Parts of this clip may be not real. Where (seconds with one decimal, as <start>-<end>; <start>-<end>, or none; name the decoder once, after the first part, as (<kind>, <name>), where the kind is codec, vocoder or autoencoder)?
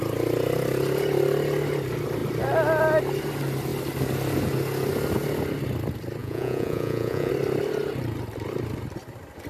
6.2-7.3 (vocoder, Vocos)